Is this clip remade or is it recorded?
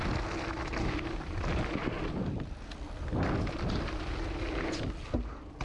recorded